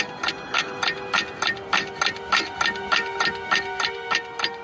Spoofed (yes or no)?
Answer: no